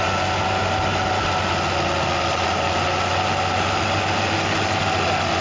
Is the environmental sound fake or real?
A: real